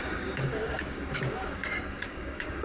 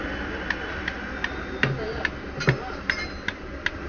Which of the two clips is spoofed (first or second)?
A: first